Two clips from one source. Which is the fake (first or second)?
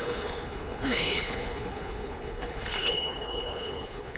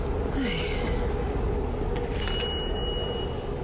first